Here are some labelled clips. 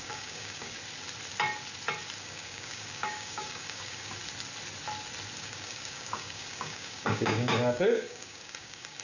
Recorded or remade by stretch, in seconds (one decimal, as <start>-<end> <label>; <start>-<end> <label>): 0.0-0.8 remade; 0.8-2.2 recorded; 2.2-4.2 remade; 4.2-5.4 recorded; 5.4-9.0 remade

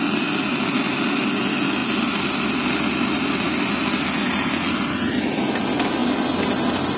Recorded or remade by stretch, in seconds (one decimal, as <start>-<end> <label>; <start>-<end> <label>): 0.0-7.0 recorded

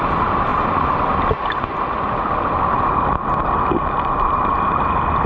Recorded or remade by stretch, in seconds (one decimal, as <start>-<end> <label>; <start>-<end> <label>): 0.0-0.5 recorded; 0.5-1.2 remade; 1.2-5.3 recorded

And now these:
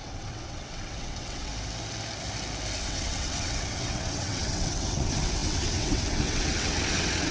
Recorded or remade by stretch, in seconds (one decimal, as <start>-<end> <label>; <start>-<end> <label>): 0.0-1.5 remade; 1.5-2.8 recorded; 2.8-7.3 remade